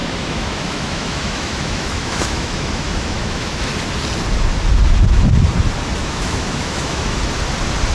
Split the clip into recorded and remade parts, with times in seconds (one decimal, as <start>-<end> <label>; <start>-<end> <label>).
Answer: 0.0-3.7 remade; 3.7-6.0 recorded; 6.0-7.2 remade; 7.2-7.9 recorded